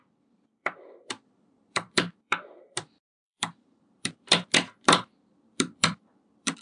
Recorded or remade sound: remade